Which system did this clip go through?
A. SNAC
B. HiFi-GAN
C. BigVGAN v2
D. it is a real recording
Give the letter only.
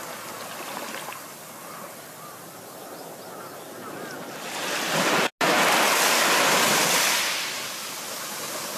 D